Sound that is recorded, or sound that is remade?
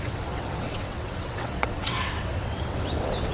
remade